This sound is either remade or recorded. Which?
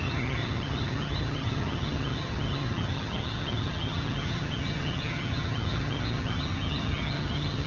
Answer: remade